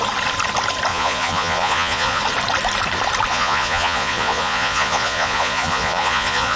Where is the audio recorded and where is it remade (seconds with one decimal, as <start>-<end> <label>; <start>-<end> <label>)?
0.0-0.9 recorded; 0.9-2.2 remade; 2.2-3.3 recorded; 3.3-6.6 remade